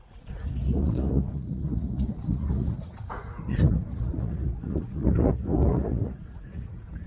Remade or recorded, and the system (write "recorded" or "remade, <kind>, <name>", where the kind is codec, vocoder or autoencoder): remade, vocoder, Vocos